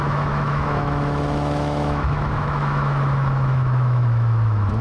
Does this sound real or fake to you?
fake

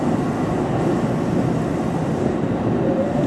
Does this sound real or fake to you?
real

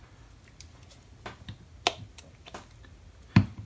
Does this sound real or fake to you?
real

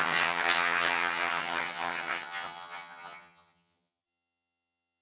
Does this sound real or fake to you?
fake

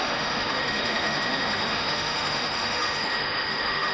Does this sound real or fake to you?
fake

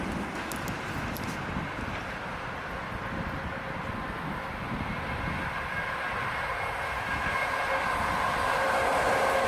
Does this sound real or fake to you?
real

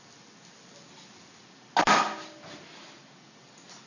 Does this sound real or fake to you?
real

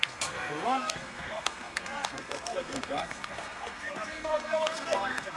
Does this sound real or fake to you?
fake